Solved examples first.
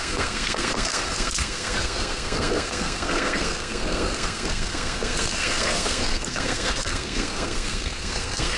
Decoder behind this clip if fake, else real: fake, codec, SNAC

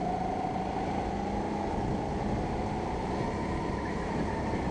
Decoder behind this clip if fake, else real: real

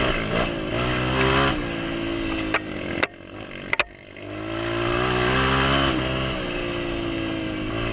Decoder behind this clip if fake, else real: real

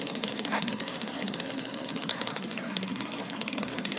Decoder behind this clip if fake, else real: fake, codec, SNAC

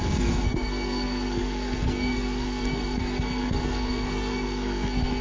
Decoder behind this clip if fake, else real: fake, codec, SNAC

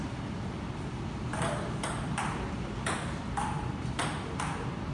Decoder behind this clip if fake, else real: real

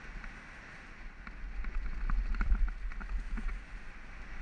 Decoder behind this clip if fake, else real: real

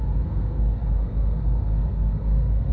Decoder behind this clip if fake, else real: fake, codec, SNAC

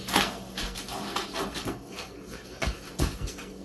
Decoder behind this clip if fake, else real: fake, codec, SNAC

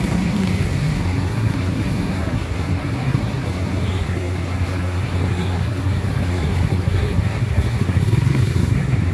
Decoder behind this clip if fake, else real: fake, codec, SNAC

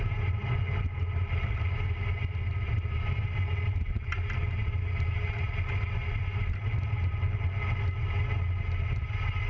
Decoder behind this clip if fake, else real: real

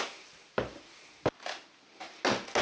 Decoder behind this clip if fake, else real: real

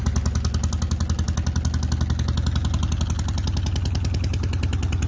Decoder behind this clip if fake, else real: real